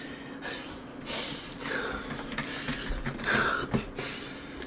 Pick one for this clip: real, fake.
real